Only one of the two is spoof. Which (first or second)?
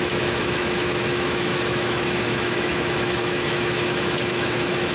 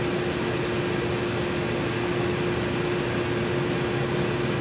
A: first